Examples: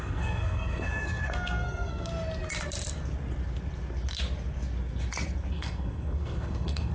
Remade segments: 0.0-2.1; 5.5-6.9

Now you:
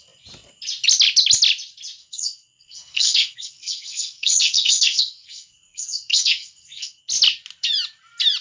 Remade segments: 2.0-7.0

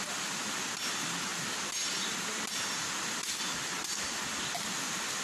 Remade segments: none

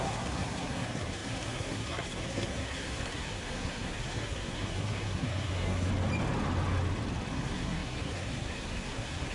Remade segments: 0.0-5.9; 7.3-9.3

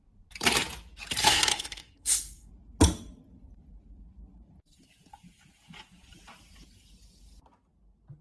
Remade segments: 1.2-2.5

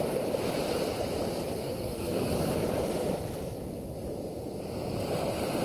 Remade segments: 1.6-2.3